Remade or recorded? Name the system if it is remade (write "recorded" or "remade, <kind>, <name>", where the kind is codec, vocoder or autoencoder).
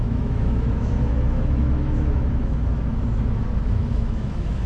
remade, autoencoder, DAC-VAE